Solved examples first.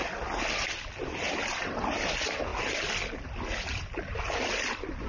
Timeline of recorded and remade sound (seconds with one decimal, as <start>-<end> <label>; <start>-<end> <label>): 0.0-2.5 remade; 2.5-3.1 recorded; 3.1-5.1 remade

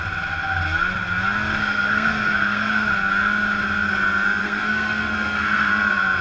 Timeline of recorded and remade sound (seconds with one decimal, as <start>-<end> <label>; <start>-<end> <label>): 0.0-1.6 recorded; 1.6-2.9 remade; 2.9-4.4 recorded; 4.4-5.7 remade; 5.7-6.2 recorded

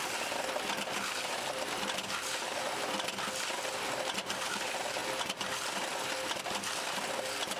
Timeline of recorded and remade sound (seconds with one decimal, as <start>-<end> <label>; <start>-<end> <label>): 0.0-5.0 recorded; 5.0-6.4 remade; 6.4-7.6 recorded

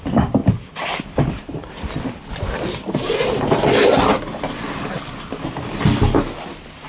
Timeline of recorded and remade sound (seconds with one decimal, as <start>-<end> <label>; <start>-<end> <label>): 0.0-0.4 recorded; 0.4-2.3 remade; 2.3-6.9 recorded

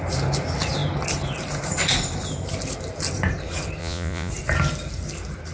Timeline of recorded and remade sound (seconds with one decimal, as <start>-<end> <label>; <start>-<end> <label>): 0.0-3.8 recorded; 3.8-4.3 remade; 4.3-5.5 recorded

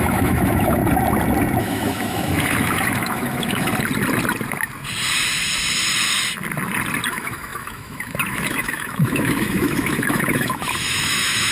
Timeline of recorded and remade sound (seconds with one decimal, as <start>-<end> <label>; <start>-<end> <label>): 0.0-0.8 remade; 0.8-1.6 recorded; 1.6-3.7 remade; 3.7-7.1 recorded; 7.1-11.5 remade

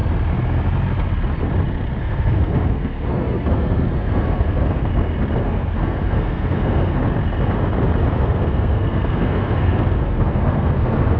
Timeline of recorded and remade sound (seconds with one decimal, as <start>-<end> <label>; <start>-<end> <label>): 0.0-2.0 recorded; 2.0-4.9 remade; 4.9-5.4 recorded; 5.4-7.0 remade; 7.0-8.1 recorded; 8.1-11.2 remade

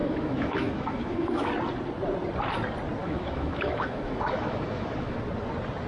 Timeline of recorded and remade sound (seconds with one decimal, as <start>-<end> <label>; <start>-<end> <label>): 0.0-1.5 remade; 1.5-3.0 recorded; 3.0-5.2 remade; 5.2-5.9 recorded